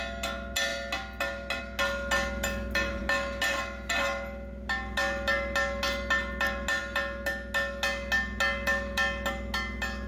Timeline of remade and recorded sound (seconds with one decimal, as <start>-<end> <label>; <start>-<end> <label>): 0.0-10.1 recorded